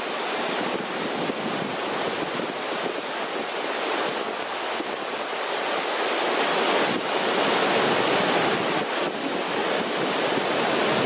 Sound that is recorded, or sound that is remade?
recorded